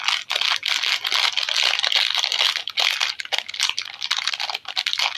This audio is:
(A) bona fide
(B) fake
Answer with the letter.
A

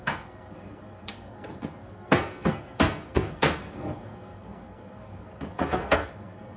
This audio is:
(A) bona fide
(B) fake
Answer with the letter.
B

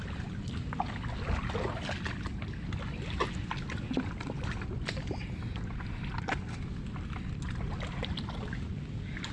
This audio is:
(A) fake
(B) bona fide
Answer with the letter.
B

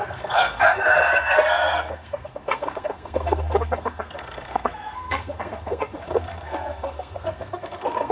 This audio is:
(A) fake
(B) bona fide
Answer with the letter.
A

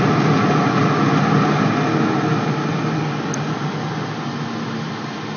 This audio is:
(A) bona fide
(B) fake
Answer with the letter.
A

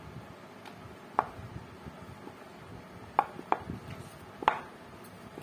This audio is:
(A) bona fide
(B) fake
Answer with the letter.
A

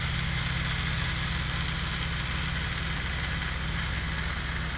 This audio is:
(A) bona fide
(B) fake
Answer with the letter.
A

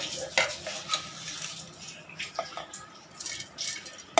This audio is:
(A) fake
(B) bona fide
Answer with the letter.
B